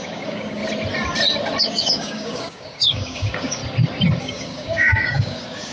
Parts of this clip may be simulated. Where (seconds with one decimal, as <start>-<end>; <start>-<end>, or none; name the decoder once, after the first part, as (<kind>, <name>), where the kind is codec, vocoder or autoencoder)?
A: 0.0-0.6 (codec, DAC); 1.6-3.6; 4.2-5.7